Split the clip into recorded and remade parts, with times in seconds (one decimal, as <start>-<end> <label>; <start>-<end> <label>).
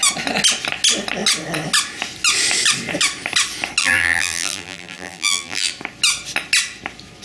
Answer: 0.0-3.8 recorded; 3.8-5.7 remade; 5.7-7.2 recorded